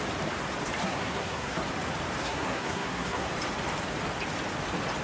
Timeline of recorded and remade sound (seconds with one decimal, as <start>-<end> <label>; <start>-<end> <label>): 0.0-0.8 recorded; 0.8-1.6 remade; 1.6-2.2 recorded; 2.2-3.3 remade; 3.3-5.0 recorded